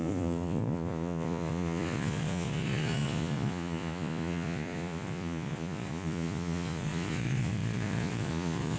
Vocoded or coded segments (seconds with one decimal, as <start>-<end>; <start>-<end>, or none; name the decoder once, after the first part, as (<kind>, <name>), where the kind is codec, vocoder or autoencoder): 0.0-8.8 (vocoder, Vocos)